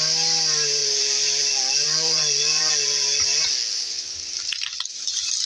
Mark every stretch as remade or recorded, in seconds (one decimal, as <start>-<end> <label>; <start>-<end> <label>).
0.0-0.8 recorded; 0.8-3.8 remade; 3.8-5.4 recorded